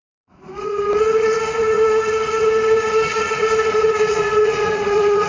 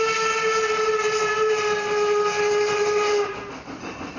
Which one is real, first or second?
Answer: second